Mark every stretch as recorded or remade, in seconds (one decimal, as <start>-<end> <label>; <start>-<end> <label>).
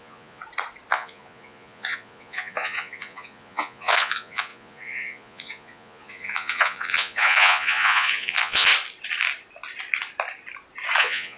0.0-0.4 remade; 0.4-0.9 recorded; 0.9-8.7 remade; 8.7-11.0 recorded; 11.0-11.4 remade